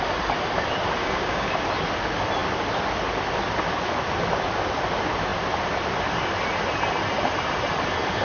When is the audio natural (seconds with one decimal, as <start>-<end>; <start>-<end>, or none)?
0.0-1.0; 1.5-8.2